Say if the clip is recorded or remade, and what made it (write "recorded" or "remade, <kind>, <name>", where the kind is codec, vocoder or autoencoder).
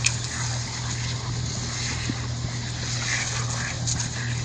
recorded